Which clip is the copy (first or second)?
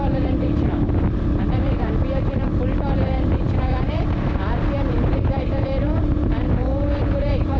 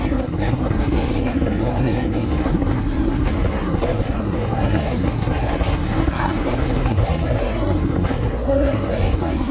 second